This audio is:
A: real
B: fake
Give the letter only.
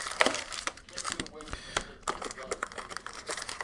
B